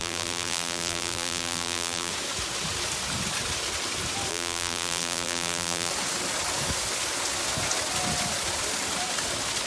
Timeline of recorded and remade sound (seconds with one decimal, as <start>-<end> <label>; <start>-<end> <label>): 0.0-2.1 remade; 2.1-4.3 recorded; 4.3-5.9 remade; 5.9-9.7 recorded